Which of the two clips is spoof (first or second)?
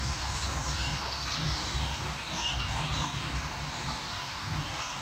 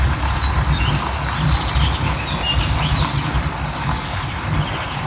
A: first